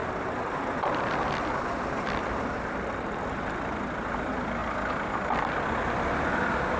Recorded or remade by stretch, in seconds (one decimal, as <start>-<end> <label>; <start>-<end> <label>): 0.0-6.8 recorded

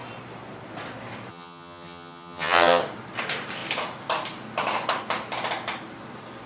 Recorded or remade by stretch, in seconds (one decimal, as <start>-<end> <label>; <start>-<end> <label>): 0.0-1.3 recorded; 1.3-2.8 remade; 2.8-6.5 recorded

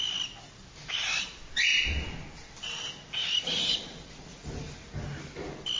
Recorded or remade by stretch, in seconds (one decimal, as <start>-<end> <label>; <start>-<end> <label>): 0.0-5.8 recorded

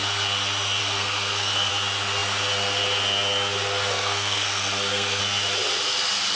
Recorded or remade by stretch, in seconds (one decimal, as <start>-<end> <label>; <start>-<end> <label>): 0.0-0.8 recorded; 0.8-1.7 remade; 1.7-3.9 recorded; 3.9-5.2 remade; 5.2-6.4 recorded

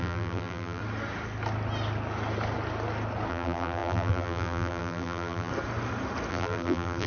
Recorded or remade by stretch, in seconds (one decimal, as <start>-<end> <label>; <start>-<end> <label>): 0.0-0.8 remade; 0.8-3.3 recorded; 3.3-5.5 remade; 5.5-6.3 recorded; 6.3-7.1 remade

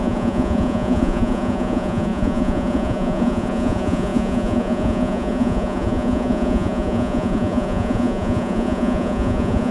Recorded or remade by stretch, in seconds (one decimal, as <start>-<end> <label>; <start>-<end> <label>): 0.0-9.7 remade